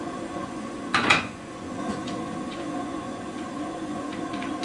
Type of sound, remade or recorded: remade